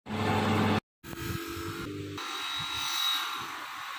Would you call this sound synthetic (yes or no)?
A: no